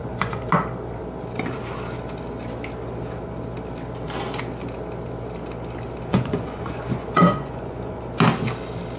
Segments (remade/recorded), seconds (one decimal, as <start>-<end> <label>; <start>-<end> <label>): 0.0-0.5 remade; 0.5-6.1 recorded; 6.1-8.0 remade; 8.0-9.0 recorded